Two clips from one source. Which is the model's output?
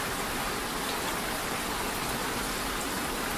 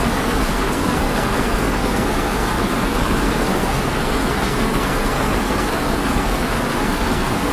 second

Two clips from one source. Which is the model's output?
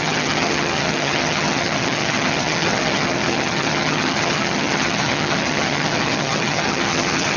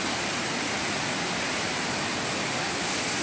first